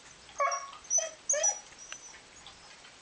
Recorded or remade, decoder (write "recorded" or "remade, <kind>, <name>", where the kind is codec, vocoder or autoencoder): recorded